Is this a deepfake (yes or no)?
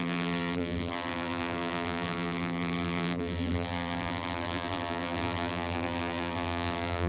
yes